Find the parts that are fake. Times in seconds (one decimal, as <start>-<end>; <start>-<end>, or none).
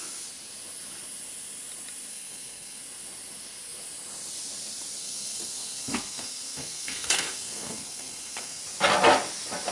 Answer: 2.1-2.8; 5.0-8.6